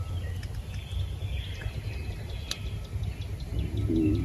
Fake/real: real